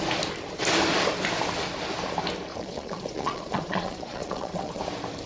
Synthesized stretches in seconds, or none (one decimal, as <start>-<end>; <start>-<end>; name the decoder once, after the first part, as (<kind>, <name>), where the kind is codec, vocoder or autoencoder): 2.5-4.8 (vocoder, Vocos)